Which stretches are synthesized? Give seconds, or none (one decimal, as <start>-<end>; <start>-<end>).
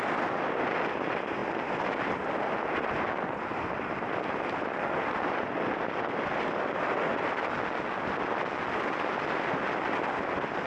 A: none